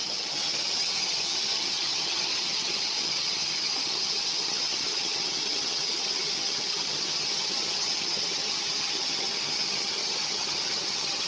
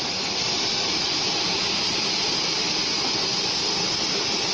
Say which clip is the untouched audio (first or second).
second